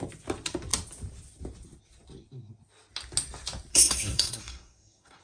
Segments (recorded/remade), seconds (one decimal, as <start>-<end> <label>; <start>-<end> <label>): 0.0-3.7 recorded; 3.7-5.2 remade